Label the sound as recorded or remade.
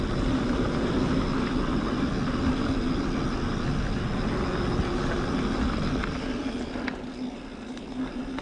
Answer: recorded